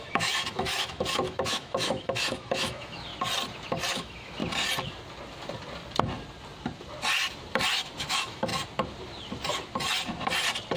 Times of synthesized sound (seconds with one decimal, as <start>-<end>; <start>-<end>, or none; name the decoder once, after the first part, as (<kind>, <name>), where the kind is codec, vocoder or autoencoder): 0.0-3.1 (autoencoder, DAC-VAE); 3.9-4.4; 8.0-8.5